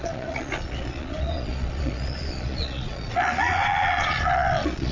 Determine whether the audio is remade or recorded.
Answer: remade